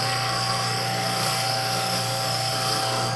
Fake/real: fake